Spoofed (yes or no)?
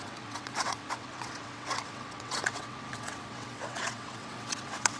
yes